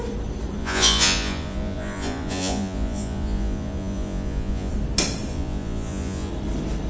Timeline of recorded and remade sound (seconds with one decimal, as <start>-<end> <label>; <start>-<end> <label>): 0.0-0.6 recorded; 0.6-4.7 remade; 4.7-5.3 recorded; 5.3-6.3 remade; 6.3-6.9 recorded